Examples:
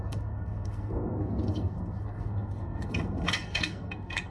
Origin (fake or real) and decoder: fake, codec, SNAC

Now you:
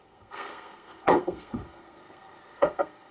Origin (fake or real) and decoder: fake, codec, SNAC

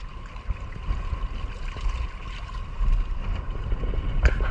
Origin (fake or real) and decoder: real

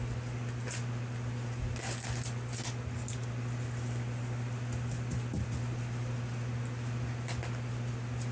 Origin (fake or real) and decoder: real